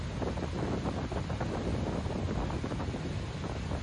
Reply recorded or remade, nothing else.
recorded